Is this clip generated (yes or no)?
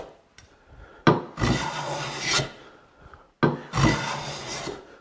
no